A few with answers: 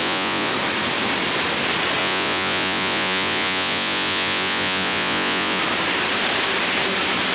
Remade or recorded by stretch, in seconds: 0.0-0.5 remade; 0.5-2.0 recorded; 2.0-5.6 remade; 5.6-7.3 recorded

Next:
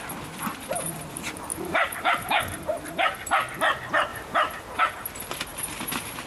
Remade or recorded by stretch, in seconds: 0.0-1.5 recorded; 1.5-2.4 remade; 2.4-4.1 recorded; 4.1-4.8 remade; 4.8-5.5 recorded; 5.5-6.3 remade

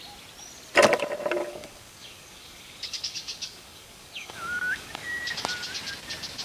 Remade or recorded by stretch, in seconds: 0.0-1.4 recorded; 1.4-5.2 remade; 5.2-6.4 recorded

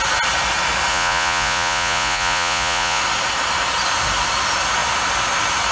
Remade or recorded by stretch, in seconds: 0.0-0.9 recorded; 0.9-3.0 remade; 3.0-5.7 recorded

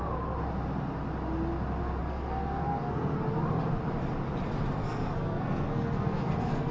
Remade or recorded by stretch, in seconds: 0.0-2.0 recorded; 2.0-3.2 remade; 3.2-4.8 recorded; 4.8-6.7 remade